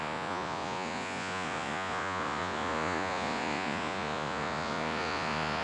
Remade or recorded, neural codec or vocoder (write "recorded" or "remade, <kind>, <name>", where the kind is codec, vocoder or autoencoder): remade, vocoder, Vocos